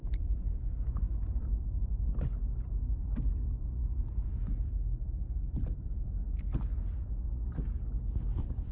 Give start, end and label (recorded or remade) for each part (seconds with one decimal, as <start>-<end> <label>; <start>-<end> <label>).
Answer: 0.0-1.6 remade; 1.6-3.8 recorded; 3.8-4.8 remade; 4.8-8.7 recorded